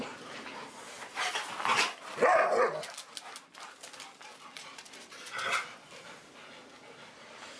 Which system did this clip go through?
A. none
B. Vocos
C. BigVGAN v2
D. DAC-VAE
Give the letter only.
A